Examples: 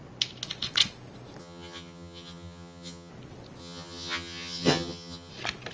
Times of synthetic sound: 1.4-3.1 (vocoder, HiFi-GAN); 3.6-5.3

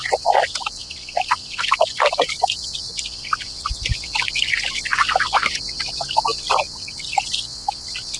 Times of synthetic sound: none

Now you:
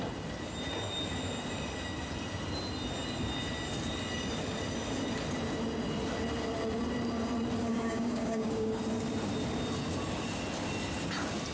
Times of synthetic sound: 7.7-8.8 (codec, DAC)